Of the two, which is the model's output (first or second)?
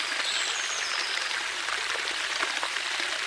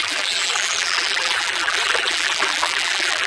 second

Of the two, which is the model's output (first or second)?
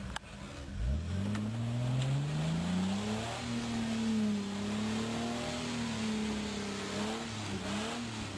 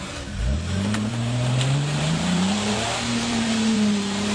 second